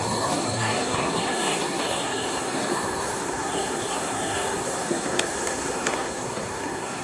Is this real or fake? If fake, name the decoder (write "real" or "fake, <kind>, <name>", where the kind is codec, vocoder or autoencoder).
fake, codec, SNAC